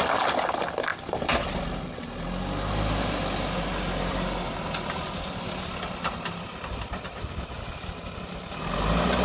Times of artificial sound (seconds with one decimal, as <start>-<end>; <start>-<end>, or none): none